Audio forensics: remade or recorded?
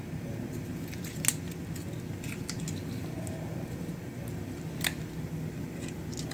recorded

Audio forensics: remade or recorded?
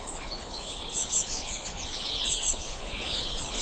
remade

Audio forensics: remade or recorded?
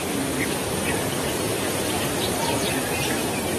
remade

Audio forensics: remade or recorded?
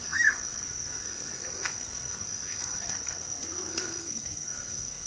remade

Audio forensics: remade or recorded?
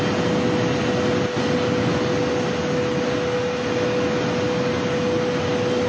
recorded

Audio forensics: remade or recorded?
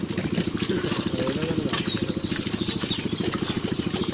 recorded